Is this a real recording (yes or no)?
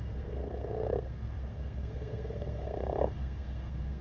no